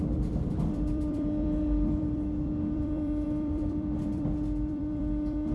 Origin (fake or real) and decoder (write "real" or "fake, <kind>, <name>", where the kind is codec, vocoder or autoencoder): fake, vocoder, BigVGAN v2